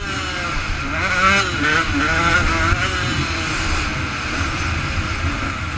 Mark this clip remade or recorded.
recorded